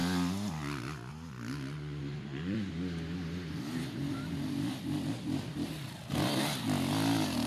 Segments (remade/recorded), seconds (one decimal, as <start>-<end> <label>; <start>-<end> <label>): 0.0-2.0 recorded; 2.0-2.7 remade; 2.7-7.5 recorded